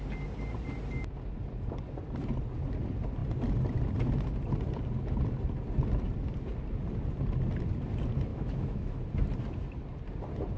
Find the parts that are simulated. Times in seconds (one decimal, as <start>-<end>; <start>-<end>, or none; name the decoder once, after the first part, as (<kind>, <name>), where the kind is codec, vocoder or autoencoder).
8.3-9.0 (autoencoder, DAC-VAE)

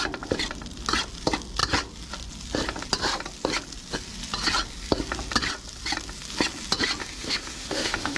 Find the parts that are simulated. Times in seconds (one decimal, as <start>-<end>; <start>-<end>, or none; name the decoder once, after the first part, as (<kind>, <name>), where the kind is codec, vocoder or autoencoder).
7.0-8.2 (autoencoder, DAC-VAE)